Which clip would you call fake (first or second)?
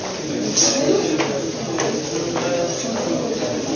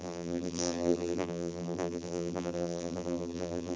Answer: second